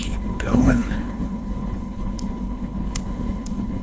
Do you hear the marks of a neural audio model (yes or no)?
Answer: yes